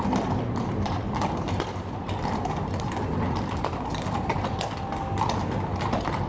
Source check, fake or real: real